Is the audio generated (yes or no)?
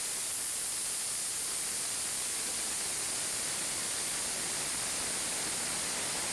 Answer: no